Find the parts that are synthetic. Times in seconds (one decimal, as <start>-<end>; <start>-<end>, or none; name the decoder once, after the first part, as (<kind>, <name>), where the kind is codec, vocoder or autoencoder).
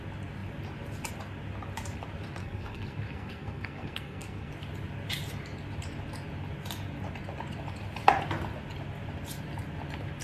2.4-4.5 (codec, SNAC)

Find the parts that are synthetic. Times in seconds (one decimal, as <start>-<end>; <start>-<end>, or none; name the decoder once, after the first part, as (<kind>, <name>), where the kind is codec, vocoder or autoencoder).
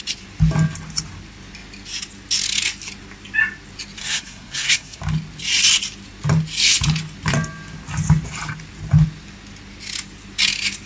4.0-5.0 (codec, SNAC)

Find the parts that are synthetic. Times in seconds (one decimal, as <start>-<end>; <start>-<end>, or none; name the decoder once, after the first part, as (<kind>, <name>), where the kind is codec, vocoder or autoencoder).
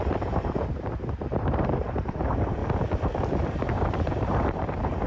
0.0-2.6 (vocoder, BigVGAN v2); 3.6-5.1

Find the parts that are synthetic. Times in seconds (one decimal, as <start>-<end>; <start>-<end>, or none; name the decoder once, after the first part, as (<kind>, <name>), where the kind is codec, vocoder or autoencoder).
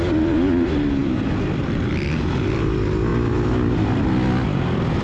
0.0-3.1 (vocoder, BigVGAN v2)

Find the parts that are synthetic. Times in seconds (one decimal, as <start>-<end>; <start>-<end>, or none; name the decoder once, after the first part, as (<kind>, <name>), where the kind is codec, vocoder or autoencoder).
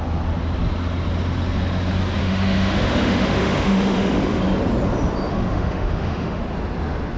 2.2-4.4 (autoencoder, DAC-VAE); 5.3-6.4